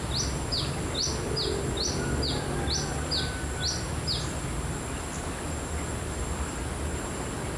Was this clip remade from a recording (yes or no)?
no